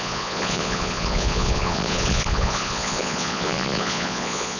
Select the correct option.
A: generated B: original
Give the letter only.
A